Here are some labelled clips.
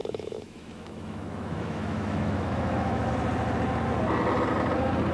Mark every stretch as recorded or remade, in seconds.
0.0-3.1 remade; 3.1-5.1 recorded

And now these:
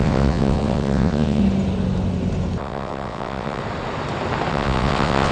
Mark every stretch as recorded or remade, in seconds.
0.0-1.4 remade; 1.4-2.6 recorded; 2.6-3.6 remade; 3.6-4.5 recorded; 4.5-5.3 remade